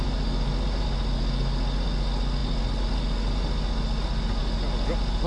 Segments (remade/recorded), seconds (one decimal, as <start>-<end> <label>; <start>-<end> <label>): 0.0-5.3 recorded

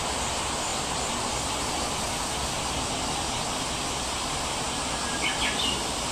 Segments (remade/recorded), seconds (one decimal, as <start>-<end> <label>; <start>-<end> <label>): 0.0-6.1 recorded